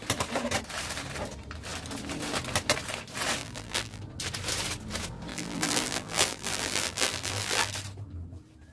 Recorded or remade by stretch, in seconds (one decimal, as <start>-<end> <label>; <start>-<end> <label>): 0.0-3.4 recorded; 3.4-4.0 remade; 4.0-5.3 recorded; 5.3-7.7 remade; 7.7-8.7 recorded

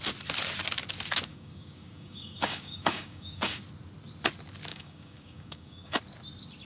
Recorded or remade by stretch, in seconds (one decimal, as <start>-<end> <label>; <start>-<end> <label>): 0.0-1.3 recorded; 1.3-3.6 remade; 3.6-4.7 recorded; 4.7-6.0 remade; 6.0-6.6 recorded